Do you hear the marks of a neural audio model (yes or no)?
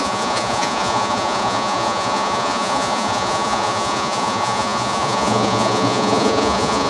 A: yes